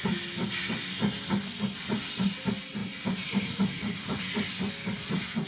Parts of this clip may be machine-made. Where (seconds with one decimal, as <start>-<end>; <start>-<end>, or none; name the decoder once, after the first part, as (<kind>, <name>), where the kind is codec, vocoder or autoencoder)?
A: 2.8-3.7 (vocoder, BigVGAN v2)